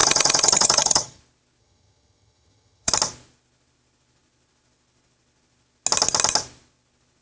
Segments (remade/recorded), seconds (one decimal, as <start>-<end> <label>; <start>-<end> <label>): 0.0-1.2 remade; 1.2-1.6 recorded; 1.6-2.9 remade; 2.9-7.2 recorded